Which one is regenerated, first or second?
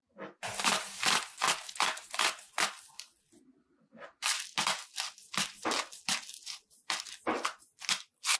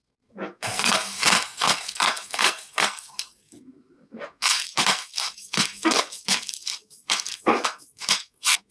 second